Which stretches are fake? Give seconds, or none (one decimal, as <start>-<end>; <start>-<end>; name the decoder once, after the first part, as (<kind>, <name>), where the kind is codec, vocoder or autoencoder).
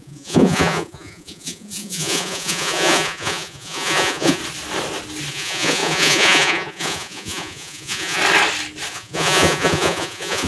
0.0-4.4 (vocoder, Vocos); 5.3-8.2; 8.9-10.5